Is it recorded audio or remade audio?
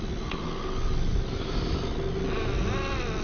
recorded